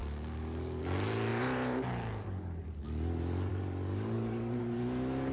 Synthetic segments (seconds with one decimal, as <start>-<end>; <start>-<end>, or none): 0.0-0.8; 3.5-4.6